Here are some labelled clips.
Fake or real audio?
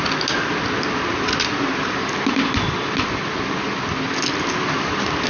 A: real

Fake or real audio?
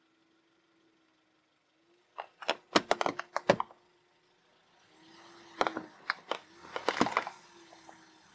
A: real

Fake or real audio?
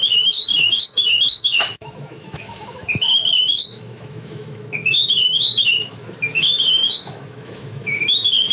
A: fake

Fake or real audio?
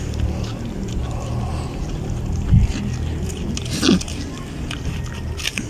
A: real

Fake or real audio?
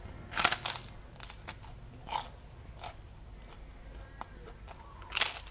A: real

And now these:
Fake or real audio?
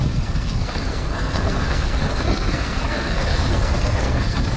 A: fake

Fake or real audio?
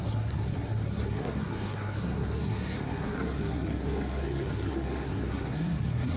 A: fake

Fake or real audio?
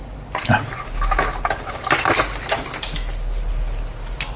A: real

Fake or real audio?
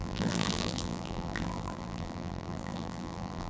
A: fake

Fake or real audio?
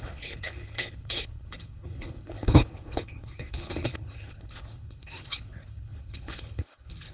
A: fake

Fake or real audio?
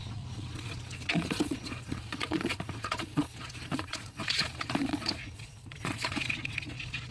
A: fake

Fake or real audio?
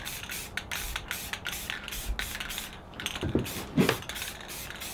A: real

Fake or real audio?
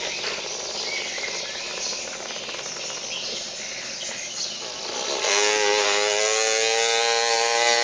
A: real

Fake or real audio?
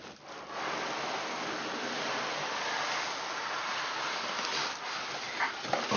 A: real